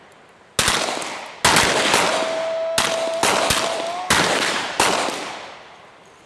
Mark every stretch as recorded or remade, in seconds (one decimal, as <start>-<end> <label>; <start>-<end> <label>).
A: 0.0-3.2 recorded; 3.2-6.3 remade